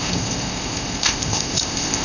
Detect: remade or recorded remade